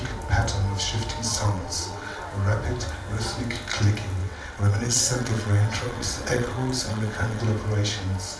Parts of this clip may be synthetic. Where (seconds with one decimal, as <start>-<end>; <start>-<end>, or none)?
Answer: 1.3-2.2; 4.2-7.4